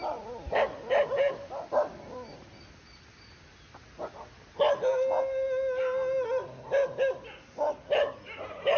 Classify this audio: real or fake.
real